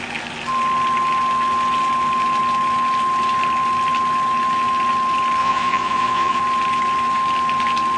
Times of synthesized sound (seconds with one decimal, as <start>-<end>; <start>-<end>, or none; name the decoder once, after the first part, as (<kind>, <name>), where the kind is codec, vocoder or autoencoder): 5.4-6.4 (vocoder, Vocos)